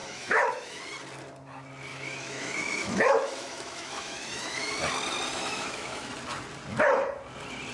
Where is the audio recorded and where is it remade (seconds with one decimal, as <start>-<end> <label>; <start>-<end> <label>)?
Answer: 0.0-0.8 remade; 0.8-1.9 recorded; 1.9-4.7 remade; 4.7-5.3 recorded; 5.3-6.1 remade; 6.1-7.7 recorded